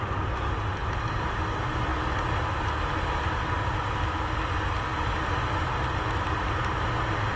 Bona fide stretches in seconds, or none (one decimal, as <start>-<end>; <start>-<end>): 0.0-0.8; 1.4-7.4